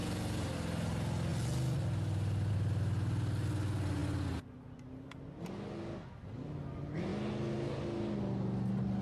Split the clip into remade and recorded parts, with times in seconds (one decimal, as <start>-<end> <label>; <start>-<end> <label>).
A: 0.0-9.0 recorded

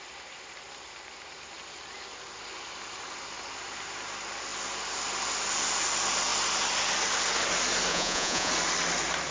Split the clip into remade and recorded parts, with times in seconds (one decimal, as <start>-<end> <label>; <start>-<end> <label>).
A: 0.0-7.9 recorded; 7.9-8.5 remade; 8.5-9.3 recorded

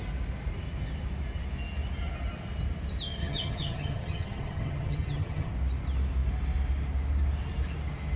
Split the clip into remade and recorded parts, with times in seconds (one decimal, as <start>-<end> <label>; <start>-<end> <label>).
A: 0.0-3.2 recorded; 3.2-5.5 remade; 5.5-8.2 recorded